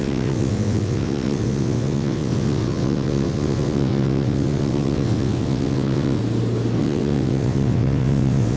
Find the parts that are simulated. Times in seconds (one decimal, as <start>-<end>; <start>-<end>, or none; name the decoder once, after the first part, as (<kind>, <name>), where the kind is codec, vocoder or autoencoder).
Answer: 0.0-6.2 (vocoder, WaveNeXt); 6.8-8.6